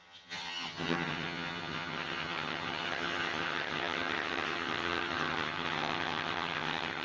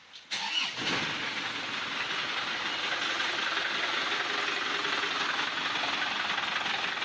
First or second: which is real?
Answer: second